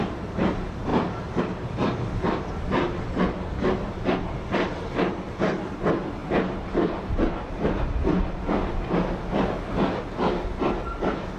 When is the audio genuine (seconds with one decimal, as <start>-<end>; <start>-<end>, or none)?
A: 0.0-6.2; 7.8-11.4